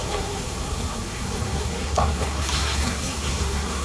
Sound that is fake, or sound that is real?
fake